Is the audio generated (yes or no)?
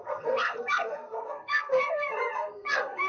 yes